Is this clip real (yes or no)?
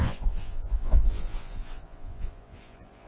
no